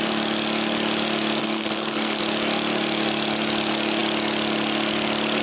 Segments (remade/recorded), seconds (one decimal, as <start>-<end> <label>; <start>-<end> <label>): 0.0-1.4 recorded; 1.4-2.2 remade; 2.2-5.4 recorded